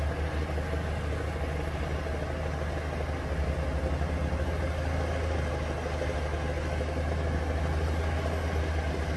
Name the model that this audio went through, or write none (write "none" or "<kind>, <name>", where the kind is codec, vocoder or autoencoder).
none